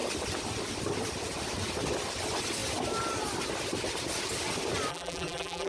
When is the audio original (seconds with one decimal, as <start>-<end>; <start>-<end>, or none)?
0.0-4.9